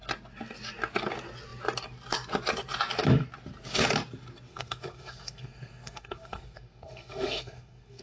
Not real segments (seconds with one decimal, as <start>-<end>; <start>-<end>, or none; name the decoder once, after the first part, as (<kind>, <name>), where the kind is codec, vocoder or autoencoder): 4.5-8.0 (codec, SNAC)